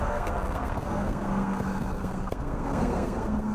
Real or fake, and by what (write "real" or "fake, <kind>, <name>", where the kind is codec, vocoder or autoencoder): fake, codec, SNAC